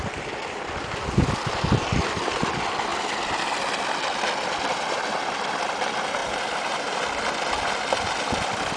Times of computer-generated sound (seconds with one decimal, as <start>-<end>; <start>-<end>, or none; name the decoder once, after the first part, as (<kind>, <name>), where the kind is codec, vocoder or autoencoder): 4.7-5.2 (vocoder, BigVGAN v2); 6.2-6.7